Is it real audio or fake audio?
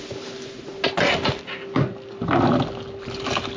real